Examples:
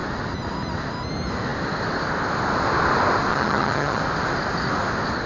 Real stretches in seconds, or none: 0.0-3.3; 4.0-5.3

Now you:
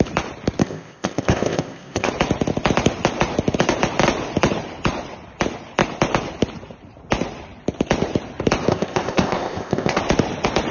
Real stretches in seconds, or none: 0.0-0.6; 2.1-8.7; 10.0-10.7

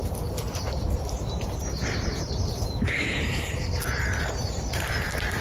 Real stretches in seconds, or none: 0.0-1.2; 3.3-4.0

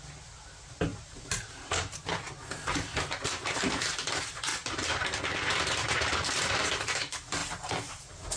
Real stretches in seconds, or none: 0.0-0.9; 2.0-4.5; 5.2-7.4

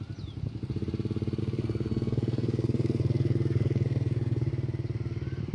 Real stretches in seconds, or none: 0.0-1.4; 4.5-5.5

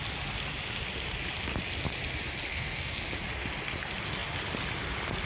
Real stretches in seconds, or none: 0.0-2.5; 3.0-5.3

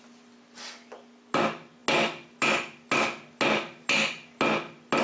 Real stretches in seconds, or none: 0.0-5.0